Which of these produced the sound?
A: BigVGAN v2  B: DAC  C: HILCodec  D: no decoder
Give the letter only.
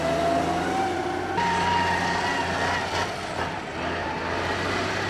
D